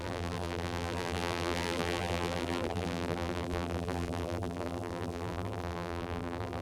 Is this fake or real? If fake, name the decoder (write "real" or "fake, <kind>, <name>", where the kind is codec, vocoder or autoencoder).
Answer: fake, vocoder, BigVGAN v2